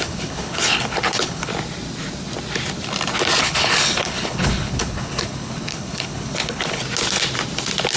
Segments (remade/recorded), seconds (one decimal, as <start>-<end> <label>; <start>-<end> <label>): 0.0-1.5 remade; 1.5-3.4 recorded; 3.4-6.8 remade; 6.8-8.0 recorded